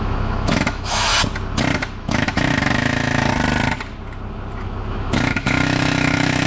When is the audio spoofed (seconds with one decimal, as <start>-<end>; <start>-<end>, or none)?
0.0-1.1; 2.0-3.3; 4.9-6.5